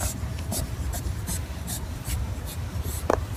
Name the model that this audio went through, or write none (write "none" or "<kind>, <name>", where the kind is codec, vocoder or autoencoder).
vocoder, BigVGAN v2